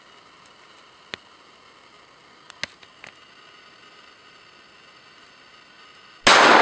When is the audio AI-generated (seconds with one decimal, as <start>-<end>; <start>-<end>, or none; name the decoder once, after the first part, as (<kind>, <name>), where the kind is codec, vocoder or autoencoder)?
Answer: none